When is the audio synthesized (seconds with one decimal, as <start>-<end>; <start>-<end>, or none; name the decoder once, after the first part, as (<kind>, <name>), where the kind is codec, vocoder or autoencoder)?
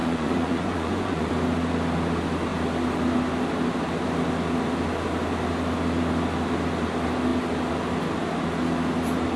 0.0-1.3 (vocoder, Vocos)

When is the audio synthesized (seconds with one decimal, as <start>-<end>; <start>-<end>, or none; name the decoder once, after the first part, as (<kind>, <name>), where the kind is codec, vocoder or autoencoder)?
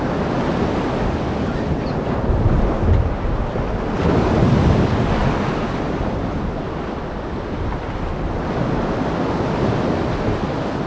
none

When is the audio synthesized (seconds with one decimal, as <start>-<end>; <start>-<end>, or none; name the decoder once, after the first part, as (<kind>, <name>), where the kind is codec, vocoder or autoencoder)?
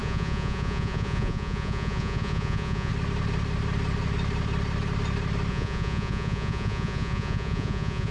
0.0-2.9 (vocoder, Vocos); 5.5-8.1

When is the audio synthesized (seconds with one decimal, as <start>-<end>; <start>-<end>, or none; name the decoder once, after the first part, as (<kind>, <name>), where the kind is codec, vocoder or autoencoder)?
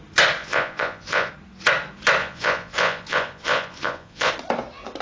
0.4-1.3 (vocoder, Vocos); 2.2-4.3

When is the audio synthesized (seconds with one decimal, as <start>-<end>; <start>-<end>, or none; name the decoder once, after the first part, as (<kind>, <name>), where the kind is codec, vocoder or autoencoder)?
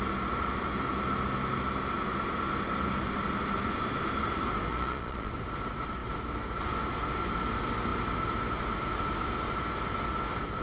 4.7-5.3 (vocoder, Vocos)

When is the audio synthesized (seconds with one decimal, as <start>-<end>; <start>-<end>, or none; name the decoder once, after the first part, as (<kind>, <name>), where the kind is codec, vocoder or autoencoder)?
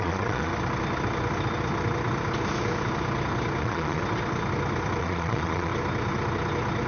0.0-0.5 (vocoder, Vocos); 3.6-4.0; 5.0-5.7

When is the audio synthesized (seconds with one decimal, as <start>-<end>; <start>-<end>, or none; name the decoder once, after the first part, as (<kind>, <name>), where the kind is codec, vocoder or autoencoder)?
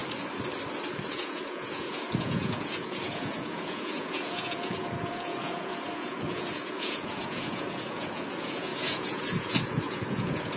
1.1-10.6 (vocoder, Vocos)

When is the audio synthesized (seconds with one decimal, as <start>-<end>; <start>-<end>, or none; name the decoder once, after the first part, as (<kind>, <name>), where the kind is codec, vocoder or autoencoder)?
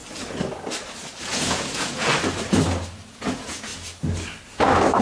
1.2-2.1 (vocoder, Vocos); 3.1-3.7